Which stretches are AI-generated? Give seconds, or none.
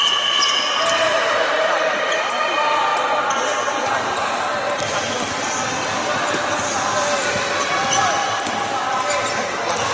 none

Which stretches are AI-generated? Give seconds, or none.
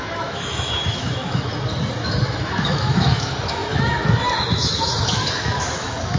0.0-1.5 (autoencoder, DAC-VAE); 2.0-6.2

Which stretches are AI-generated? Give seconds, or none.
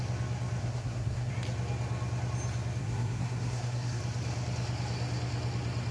0.6-1.3 (codec, SNAC); 2.8-4.0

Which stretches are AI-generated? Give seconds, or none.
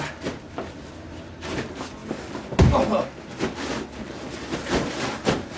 none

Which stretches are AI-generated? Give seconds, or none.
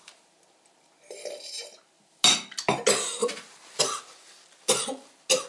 3.2-3.8 (vocoder, BigVGAN v2)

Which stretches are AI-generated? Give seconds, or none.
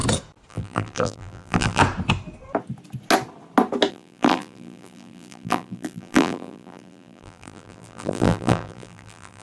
0.5-1.8 (vocoder, BigVGAN v2); 3.9-9.4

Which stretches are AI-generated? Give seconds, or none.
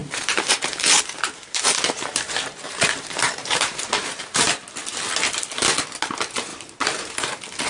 0.0-4.6 (vocoder, BigVGAN v2); 6.5-7.1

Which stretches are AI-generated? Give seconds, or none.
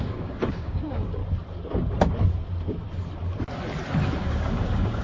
0.0-1.2 (codec, DAC); 4.2-5.0